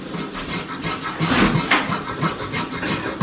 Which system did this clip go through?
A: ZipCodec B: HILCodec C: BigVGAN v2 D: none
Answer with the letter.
D